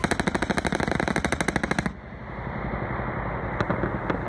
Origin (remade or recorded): recorded